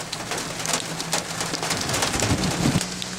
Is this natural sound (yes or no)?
yes